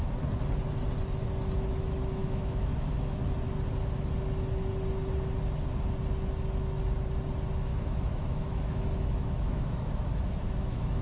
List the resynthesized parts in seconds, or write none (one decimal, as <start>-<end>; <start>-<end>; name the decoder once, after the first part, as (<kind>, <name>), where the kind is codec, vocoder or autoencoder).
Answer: 2.2-3.2 (autoencoder, DAC-VAE); 7.7-11.0